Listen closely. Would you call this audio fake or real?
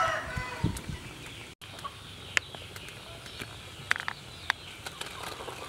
real